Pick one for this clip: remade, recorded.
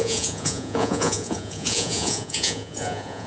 remade